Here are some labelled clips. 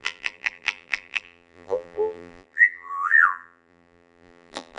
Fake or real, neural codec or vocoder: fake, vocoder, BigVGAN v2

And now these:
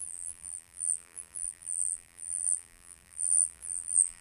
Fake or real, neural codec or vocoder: fake, vocoder, BigVGAN v2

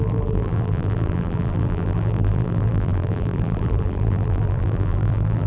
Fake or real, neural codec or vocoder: fake, vocoder, BigVGAN v2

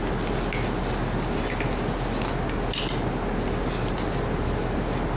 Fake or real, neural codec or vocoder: real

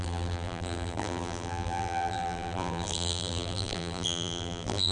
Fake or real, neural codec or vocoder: fake, vocoder, BigVGAN v2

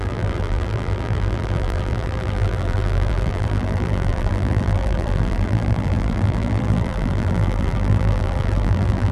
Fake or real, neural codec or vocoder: fake, vocoder, BigVGAN v2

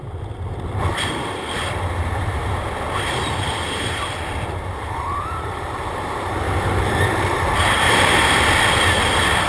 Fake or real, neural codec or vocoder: fake, vocoder, BigVGAN v2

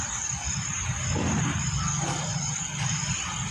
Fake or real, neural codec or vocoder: fake, vocoder, BigVGAN v2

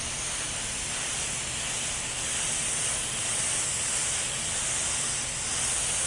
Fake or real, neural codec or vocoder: real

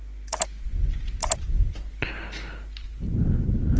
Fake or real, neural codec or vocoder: real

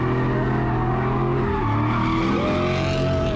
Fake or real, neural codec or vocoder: real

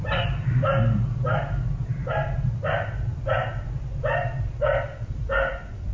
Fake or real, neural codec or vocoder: fake, vocoder, BigVGAN v2